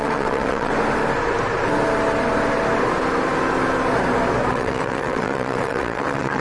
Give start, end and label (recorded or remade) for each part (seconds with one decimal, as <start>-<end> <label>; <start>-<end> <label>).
0.0-0.7 remade; 0.7-4.5 recorded; 4.5-6.4 remade